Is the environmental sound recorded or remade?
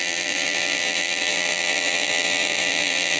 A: remade